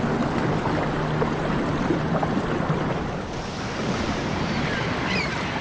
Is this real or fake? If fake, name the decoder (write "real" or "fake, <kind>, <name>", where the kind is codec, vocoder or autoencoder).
real